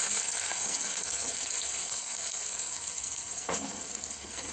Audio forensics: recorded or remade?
remade